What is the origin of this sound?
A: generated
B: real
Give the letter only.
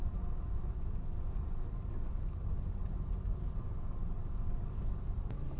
B